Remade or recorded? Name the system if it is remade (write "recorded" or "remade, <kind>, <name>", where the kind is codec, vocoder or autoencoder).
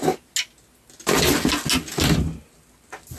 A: recorded